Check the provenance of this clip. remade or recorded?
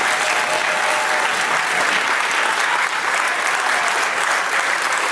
recorded